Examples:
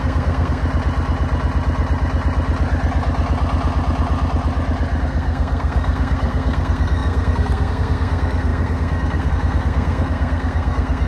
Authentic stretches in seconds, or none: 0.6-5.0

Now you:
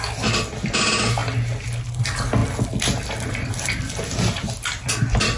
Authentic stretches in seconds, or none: 0.0-5.4